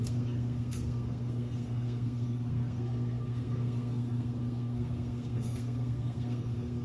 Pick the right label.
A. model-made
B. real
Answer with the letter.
A